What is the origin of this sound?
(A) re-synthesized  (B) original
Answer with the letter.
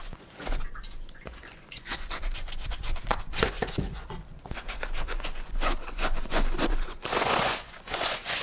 A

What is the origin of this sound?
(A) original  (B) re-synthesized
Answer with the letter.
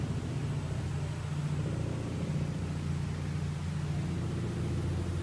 A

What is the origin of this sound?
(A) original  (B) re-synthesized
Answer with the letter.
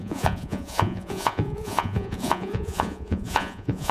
B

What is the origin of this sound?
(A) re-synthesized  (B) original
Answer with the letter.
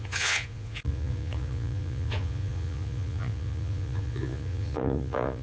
A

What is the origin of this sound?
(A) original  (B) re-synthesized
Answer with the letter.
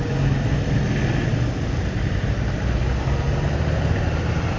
A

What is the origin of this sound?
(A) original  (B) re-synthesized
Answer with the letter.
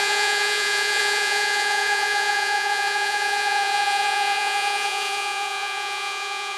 B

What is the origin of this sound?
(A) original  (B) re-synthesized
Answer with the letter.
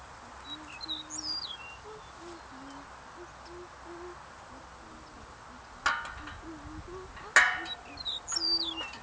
A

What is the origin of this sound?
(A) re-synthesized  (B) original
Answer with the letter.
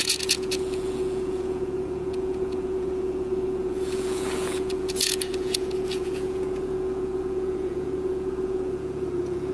A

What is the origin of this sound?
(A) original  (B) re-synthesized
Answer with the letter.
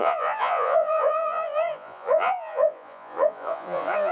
B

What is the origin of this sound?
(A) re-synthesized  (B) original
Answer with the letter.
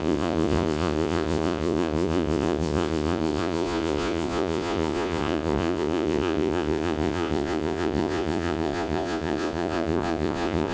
A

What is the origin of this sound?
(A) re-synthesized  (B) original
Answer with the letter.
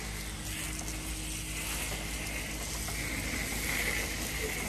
B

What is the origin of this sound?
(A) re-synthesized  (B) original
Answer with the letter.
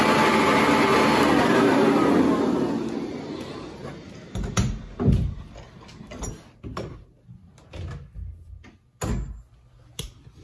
B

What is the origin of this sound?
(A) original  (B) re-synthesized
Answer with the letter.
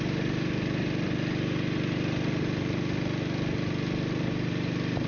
A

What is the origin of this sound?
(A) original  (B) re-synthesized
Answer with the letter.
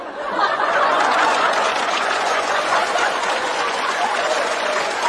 B